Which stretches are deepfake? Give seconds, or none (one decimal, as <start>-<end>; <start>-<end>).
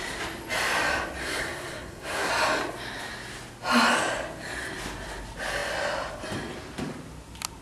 1.2-2.3